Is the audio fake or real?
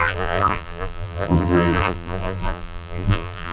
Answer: fake